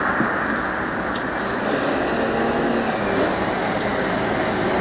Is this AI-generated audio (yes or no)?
no